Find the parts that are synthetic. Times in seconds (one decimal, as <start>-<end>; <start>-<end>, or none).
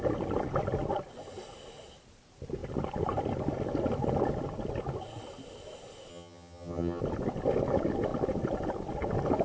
6.1-7.0